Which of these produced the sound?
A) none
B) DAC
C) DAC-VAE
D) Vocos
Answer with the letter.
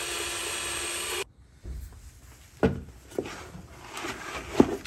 A